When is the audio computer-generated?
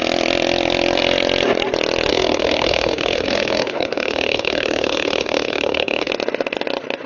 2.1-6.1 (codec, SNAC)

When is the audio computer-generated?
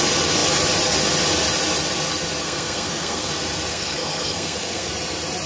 2.4-3.3 (codec, SNAC); 3.7-4.9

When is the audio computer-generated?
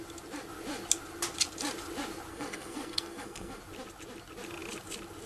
2.3-3.6 (codec, SNAC)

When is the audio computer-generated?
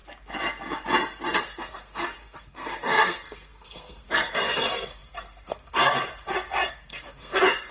1.4-7.7 (codec, SNAC)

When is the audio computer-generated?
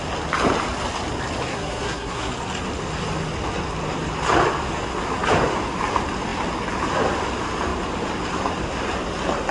1.5-2.3 (codec, SNAC)